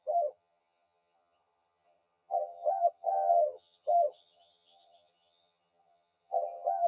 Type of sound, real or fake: fake